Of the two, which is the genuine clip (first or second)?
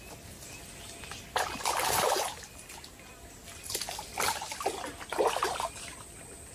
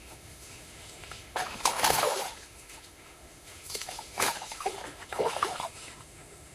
first